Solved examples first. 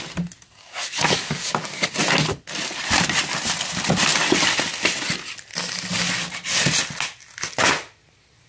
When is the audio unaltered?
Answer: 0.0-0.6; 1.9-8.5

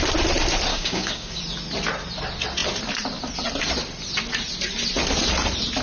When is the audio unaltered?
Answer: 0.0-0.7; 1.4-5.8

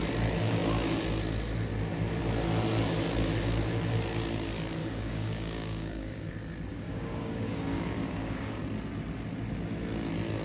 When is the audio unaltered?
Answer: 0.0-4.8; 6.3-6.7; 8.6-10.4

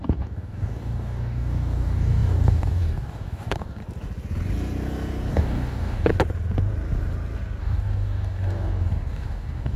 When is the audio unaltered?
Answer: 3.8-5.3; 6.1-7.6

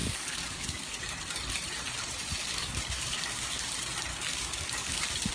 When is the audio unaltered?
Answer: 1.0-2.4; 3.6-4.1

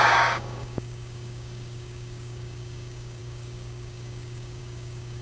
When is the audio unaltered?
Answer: none

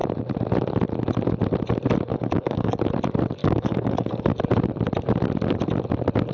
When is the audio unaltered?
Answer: 0.0-2.1; 2.8-3.4; 4.4-6.3